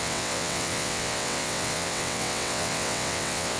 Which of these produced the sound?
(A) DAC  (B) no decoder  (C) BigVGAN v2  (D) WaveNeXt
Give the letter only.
D